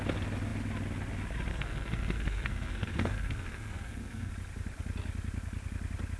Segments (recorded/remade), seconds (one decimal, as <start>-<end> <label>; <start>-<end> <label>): 0.0-1.5 recorded; 1.5-4.3 remade; 4.3-6.2 recorded